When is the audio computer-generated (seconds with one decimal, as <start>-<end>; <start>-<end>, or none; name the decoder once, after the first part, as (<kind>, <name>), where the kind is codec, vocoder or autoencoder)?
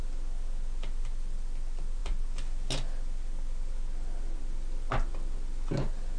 none